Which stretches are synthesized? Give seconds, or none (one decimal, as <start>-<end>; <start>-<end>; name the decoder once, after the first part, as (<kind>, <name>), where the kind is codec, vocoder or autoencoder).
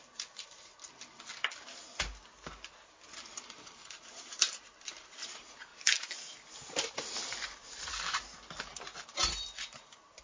0.0-0.7 (vocoder, BigVGAN v2); 3.4-5.7; 6.5-10.2